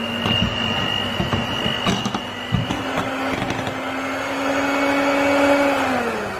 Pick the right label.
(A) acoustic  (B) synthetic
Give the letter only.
A